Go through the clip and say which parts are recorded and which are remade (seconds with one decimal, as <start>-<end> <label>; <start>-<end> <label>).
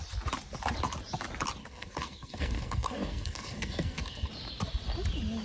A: 0.0-1.6 recorded; 1.6-4.3 remade; 4.3-5.4 recorded